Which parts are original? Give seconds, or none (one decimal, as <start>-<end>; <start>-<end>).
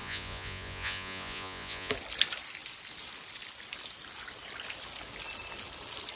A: 1.9-6.2